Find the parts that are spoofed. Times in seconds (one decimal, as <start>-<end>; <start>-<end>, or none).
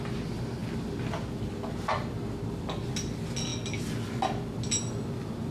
none